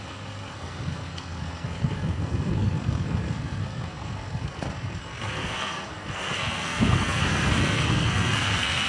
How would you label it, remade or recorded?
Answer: remade